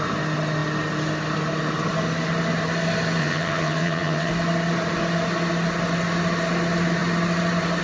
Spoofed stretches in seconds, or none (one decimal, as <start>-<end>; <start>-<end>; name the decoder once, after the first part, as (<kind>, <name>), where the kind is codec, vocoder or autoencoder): 3.2-4.3 (vocoder, HiFi-GAN)